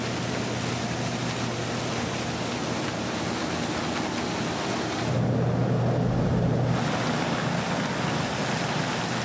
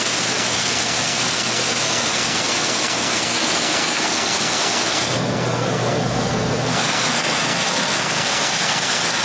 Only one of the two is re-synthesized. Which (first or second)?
second